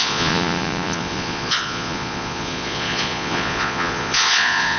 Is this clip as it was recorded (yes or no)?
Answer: no